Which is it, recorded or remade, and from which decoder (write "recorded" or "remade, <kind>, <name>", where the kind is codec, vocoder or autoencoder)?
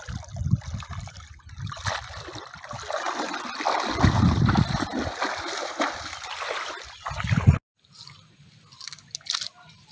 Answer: recorded